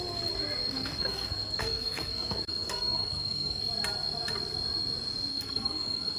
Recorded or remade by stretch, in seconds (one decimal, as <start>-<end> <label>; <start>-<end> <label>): 0.0-0.6 recorded; 0.6-3.6 remade; 3.6-5.3 recorded; 5.3-6.2 remade